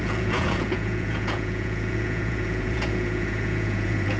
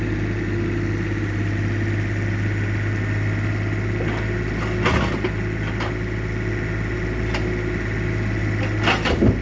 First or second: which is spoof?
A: first